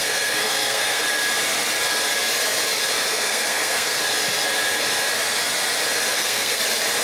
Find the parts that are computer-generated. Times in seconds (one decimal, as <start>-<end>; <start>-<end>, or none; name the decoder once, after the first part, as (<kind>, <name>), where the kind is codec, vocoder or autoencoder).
0.0-1.0 (codec, SNAC); 3.1-4.0; 6.1-6.6